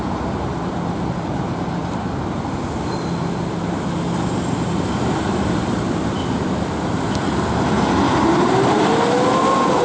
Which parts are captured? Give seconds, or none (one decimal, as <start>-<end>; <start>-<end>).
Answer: 0.0-9.8